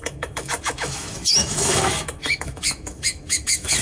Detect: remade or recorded remade